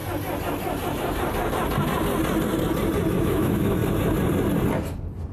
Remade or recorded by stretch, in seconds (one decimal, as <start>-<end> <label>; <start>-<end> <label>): 0.0-3.2 recorded; 3.2-3.8 remade; 3.8-5.3 recorded